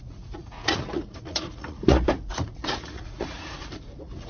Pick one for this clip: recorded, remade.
remade